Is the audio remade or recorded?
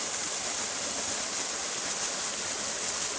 recorded